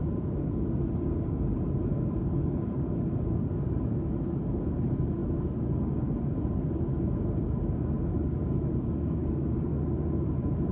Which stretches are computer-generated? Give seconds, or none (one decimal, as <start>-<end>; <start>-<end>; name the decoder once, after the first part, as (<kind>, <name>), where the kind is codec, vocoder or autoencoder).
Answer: 0.0-10.7 (codec, DAC)